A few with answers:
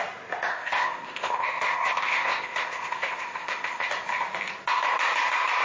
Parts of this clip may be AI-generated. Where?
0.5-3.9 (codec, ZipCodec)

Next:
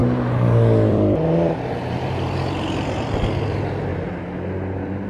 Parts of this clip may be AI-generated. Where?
0.9-3.9 (vocoder, BigVGAN v2)

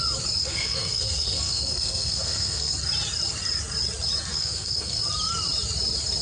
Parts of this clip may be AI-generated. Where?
0.4-2.7 (codec, SNAC); 4.3-5.0

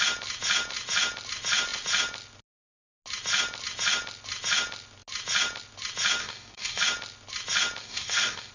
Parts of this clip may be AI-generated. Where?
6.2-6.8 (codec, DAC); 7.8-8.5